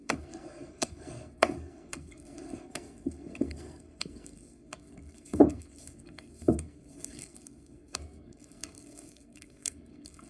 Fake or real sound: fake